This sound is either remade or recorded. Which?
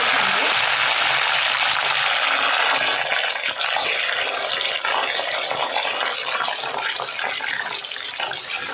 recorded